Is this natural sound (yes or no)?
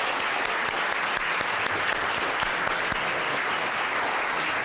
yes